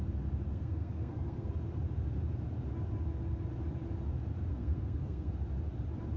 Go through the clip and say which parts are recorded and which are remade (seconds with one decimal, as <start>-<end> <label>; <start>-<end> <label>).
0.0-0.5 recorded; 0.5-1.5 remade; 1.5-4.5 recorded; 4.5-5.3 remade; 5.3-6.2 recorded